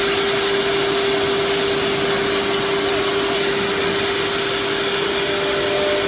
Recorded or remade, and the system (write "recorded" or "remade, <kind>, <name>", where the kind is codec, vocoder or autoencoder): recorded